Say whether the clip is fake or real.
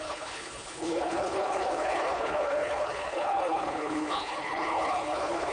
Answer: fake